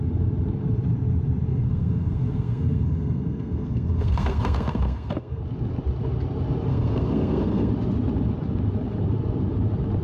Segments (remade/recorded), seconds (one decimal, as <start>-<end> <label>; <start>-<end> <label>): 0.0-1.5 recorded; 1.5-5.4 remade; 5.4-6.7 recorded; 6.7-7.7 remade; 7.7-10.0 recorded